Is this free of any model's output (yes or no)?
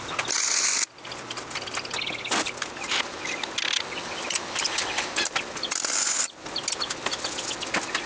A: yes